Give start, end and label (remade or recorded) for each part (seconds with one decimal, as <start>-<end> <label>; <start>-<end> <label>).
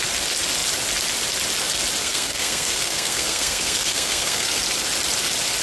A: 0.0-2.0 recorded; 2.0-4.6 remade; 4.6-5.6 recorded